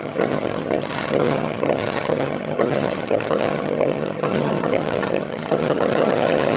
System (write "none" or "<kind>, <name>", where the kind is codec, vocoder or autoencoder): vocoder, HiFi-GAN